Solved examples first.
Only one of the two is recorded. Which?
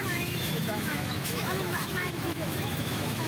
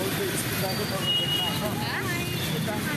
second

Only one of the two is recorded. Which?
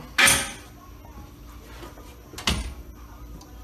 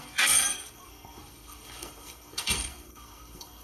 first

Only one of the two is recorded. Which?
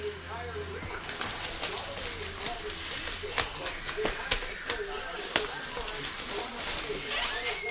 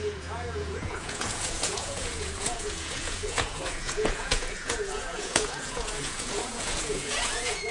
first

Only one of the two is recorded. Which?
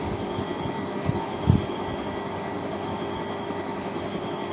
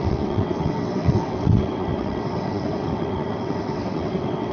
first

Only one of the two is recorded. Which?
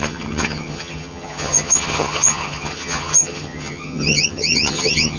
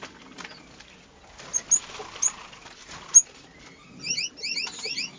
second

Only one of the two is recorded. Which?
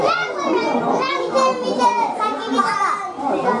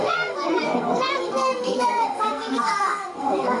first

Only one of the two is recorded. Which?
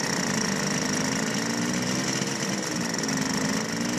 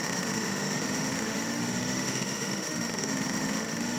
first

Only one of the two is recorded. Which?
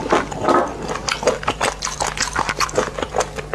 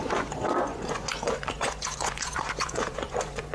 first